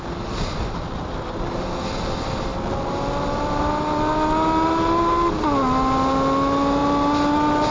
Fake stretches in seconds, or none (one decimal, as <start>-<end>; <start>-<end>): none

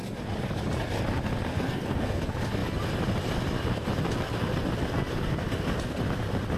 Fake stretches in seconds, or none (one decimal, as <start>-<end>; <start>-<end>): 1.5-2.2

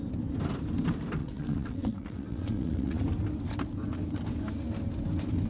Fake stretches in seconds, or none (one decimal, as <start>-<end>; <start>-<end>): 1.2-3.0

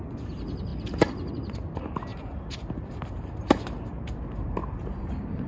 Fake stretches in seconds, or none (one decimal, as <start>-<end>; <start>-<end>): 0.7-1.3; 2.1-5.5

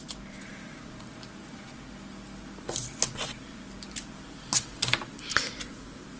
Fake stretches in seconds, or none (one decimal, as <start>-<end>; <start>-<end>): none

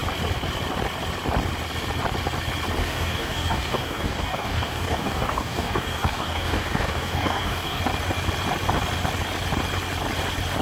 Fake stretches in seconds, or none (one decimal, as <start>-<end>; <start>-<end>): 2.8-7.8